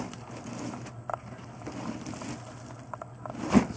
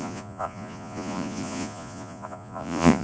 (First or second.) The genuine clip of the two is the first